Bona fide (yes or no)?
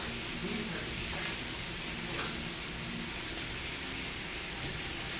yes